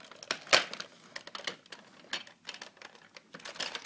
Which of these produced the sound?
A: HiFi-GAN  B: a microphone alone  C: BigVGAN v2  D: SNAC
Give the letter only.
B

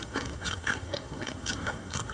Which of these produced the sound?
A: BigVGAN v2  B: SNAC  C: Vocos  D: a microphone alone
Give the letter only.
B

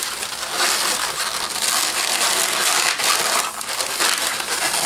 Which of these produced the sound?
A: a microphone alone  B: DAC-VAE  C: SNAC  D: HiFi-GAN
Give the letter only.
A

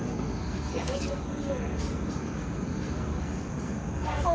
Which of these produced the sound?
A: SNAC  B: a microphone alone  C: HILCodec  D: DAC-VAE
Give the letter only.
A